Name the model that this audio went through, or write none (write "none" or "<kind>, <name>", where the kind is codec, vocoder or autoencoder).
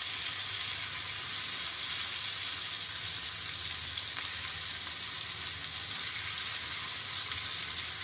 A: none